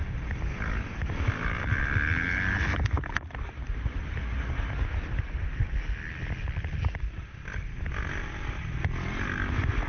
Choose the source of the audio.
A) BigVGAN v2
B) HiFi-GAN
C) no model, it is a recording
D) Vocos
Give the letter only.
C